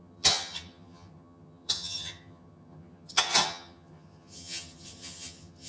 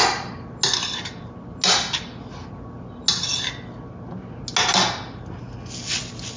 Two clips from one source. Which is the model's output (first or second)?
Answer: first